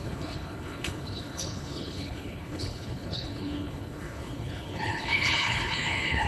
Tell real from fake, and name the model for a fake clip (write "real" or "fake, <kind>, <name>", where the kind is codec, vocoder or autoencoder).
fake, codec, HILCodec